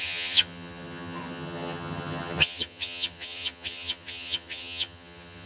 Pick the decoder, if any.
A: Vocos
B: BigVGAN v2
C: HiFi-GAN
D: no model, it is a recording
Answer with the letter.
C